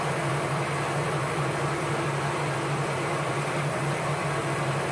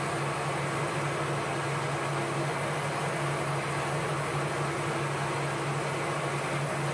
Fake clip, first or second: first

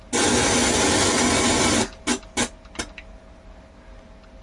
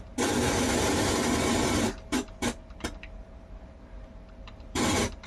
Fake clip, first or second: second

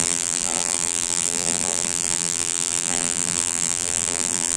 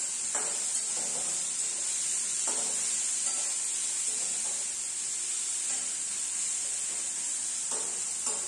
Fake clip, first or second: first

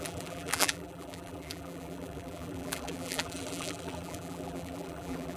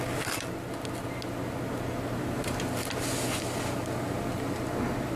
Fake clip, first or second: first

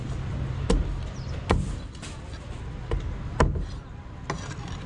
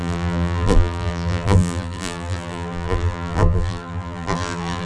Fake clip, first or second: second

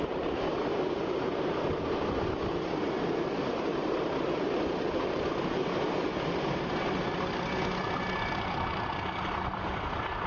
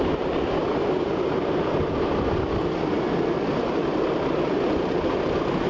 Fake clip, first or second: first